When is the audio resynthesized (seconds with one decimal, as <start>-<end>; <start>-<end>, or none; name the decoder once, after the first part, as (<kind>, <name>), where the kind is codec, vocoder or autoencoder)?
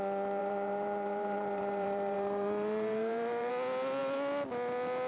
0.4-3.5 (vocoder, BigVGAN v2)